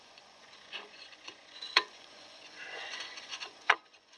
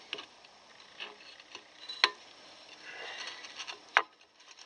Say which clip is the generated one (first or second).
first